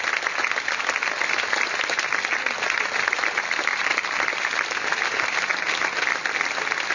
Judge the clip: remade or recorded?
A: recorded